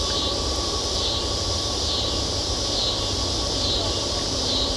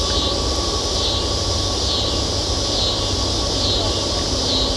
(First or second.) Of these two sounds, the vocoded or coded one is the first